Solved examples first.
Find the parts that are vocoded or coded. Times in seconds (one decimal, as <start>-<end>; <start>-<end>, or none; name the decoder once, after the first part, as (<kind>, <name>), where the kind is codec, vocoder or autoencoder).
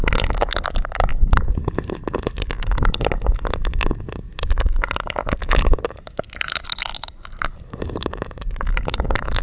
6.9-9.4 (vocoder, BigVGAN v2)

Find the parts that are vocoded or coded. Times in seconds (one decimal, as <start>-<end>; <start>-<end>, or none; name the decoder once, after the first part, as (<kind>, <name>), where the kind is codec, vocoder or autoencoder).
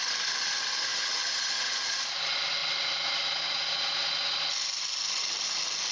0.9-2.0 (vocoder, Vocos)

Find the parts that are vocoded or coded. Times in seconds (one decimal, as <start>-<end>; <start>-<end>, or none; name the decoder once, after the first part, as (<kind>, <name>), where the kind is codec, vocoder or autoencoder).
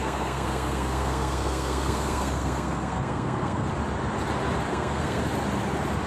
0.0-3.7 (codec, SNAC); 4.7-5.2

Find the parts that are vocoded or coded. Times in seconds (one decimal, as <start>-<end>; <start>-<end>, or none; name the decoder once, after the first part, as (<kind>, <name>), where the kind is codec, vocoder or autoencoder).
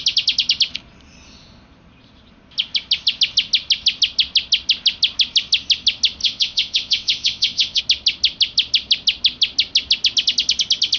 6.2-7.8 (vocoder, WaveNeXt)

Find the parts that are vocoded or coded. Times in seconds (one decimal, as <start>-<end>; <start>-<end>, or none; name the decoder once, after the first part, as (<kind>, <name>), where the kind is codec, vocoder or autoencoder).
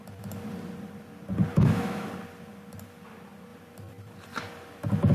1.5-2.1 (autoencoder, DAC-VAE)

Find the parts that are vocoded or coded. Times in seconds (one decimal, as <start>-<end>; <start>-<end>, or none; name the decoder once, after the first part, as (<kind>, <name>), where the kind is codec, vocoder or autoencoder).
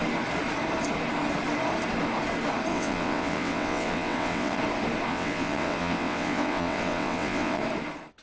2.7-4.6 (vocoder, WaveNeXt); 5.1-7.6